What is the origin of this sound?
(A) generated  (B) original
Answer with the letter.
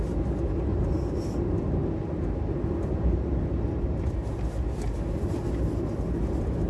B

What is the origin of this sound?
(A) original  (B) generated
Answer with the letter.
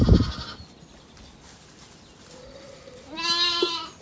A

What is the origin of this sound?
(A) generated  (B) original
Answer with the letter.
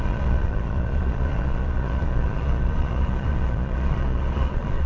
A